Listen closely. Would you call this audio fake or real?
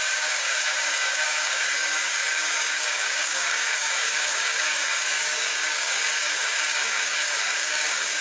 fake